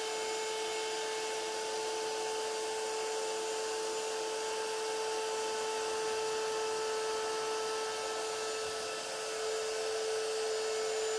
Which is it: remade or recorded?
recorded